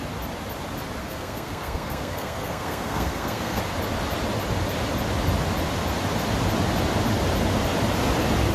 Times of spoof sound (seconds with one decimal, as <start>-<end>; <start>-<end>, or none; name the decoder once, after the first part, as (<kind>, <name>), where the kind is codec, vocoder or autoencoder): 1.0-3.6 (codec, SNAC)